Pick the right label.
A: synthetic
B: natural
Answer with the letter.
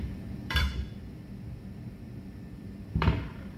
A